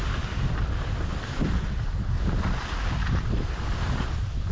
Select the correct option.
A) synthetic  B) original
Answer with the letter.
B